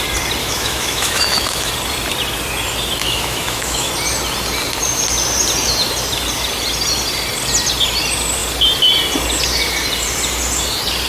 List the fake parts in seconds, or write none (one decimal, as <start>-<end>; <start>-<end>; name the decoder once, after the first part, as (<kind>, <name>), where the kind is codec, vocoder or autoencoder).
0.4-1.7 (autoencoder, DAC-VAE); 3.0-3.9